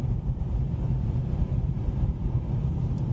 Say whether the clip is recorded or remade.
remade